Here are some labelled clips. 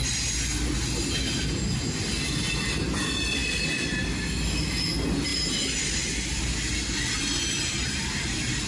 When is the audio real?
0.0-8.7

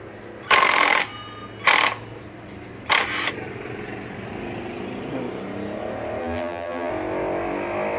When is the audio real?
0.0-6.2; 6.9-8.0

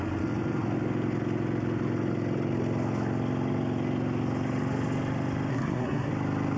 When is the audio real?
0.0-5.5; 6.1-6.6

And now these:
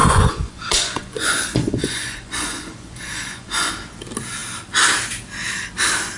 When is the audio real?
3.7-6.2

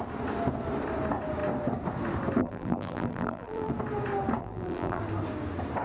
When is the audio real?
0.0-2.4; 3.7-4.4; 5.0-5.8

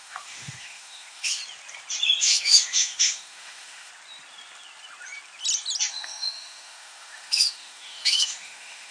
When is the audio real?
1.4-2.2; 3.9-5.9

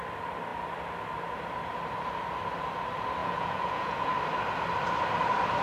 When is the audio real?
0.0-3.2; 4.1-5.6

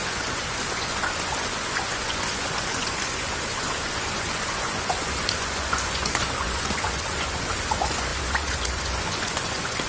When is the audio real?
none